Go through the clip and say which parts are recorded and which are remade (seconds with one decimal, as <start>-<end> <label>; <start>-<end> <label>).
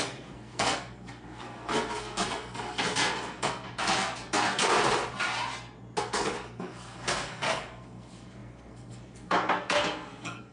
0.0-4.7 remade; 4.7-6.0 recorded; 6.0-10.5 remade